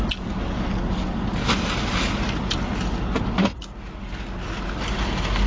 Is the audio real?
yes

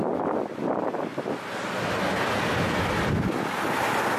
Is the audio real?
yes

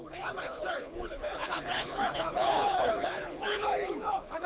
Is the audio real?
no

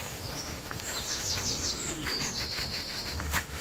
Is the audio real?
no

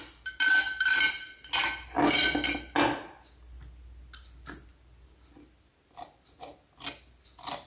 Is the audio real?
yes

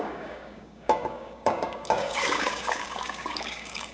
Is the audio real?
no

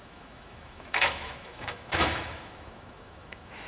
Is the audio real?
no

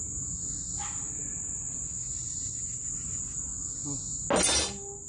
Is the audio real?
yes